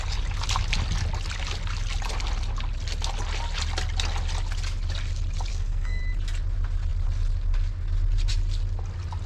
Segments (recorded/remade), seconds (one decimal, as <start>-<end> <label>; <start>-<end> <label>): 0.0-5.5 recorded; 5.5-6.0 remade; 6.0-9.3 recorded